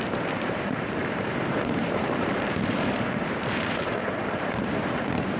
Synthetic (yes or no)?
yes